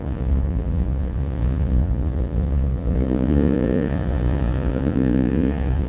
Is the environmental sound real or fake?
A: fake